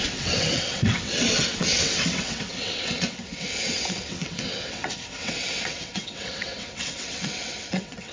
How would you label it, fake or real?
fake